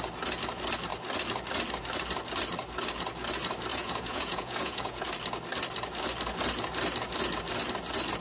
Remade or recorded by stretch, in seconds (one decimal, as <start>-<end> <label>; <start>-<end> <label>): 0.0-3.7 recorded; 3.7-5.0 remade; 5.0-8.2 recorded